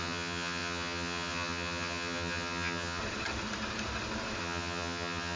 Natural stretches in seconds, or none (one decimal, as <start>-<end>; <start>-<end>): 3.0-4.4